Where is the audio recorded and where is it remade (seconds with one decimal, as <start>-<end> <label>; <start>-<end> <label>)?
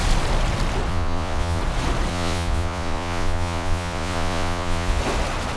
0.0-0.9 recorded; 0.9-1.6 remade; 1.6-2.1 recorded; 2.1-5.0 remade; 5.0-5.6 recorded